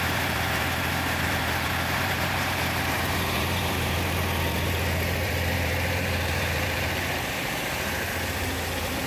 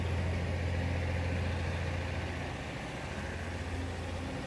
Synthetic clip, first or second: first